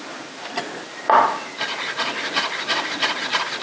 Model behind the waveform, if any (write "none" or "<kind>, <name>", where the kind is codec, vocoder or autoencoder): vocoder, BigVGAN v2